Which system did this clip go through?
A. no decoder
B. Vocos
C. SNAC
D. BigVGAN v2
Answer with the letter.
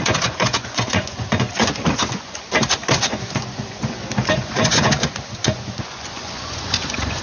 B